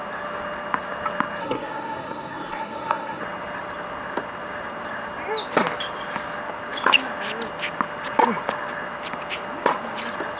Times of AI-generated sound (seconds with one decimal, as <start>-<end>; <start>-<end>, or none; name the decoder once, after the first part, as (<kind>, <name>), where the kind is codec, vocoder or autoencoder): 1.4-3.2 (codec, SNAC)